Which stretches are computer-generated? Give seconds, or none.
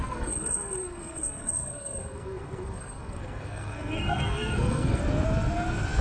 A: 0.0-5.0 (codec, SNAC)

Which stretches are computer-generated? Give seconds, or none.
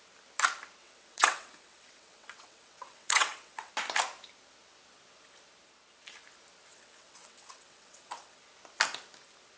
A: 0.8-3.7 (vocoder, WaveNeXt); 6.7-8.4